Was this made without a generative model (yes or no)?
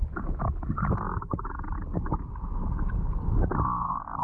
yes